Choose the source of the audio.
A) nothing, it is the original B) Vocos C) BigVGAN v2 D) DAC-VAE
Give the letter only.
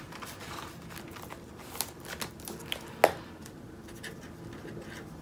A